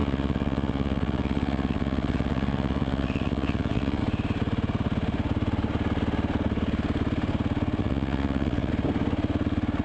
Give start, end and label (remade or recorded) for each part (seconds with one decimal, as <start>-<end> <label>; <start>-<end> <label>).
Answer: 0.0-4.0 remade; 4.0-7.8 recorded; 7.8-8.7 remade; 8.7-9.8 recorded